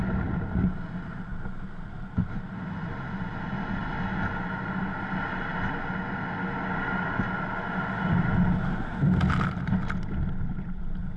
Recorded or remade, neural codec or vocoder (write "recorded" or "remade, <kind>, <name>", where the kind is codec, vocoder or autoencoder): recorded